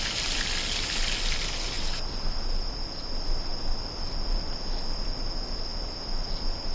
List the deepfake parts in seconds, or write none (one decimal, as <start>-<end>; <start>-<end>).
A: none